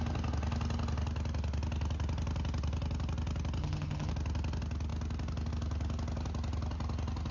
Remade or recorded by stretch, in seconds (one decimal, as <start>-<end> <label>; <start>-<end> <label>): 0.0-3.6 recorded; 3.6-4.1 remade; 4.1-7.3 recorded